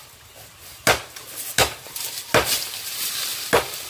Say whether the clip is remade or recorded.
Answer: recorded